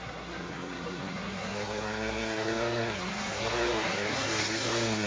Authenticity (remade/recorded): remade